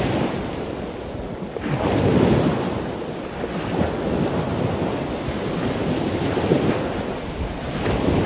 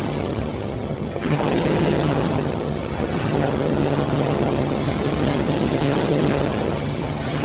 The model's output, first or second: second